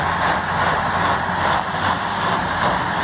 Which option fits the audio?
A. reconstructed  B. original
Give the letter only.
B